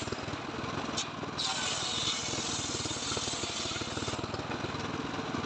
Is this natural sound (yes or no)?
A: yes